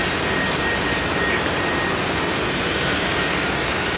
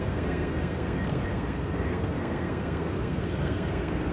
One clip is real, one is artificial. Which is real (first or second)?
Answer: first